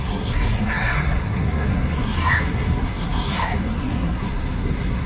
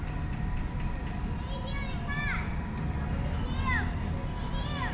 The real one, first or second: second